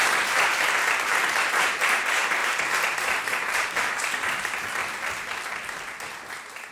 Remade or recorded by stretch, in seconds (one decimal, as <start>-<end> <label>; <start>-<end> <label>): 0.0-0.8 remade; 0.8-1.5 recorded; 1.5-4.8 remade; 4.8-6.7 recorded